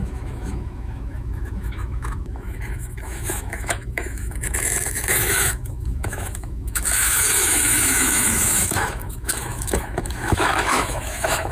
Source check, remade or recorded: remade